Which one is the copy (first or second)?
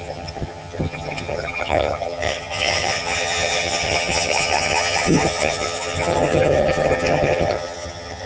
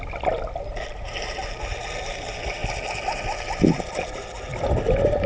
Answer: first